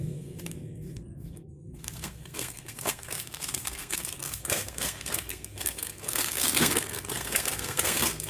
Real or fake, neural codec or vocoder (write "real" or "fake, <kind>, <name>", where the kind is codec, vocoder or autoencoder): fake, codec, SNAC